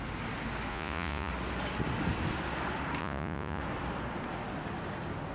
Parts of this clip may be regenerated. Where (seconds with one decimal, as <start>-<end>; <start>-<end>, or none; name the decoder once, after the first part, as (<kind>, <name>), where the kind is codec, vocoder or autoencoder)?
0.7-1.3 (vocoder, Vocos); 3.0-3.6